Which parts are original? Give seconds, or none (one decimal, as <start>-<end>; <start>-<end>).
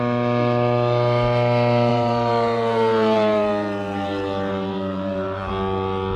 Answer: 0.0-1.9; 5.5-6.2